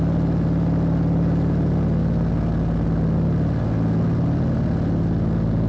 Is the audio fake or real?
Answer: real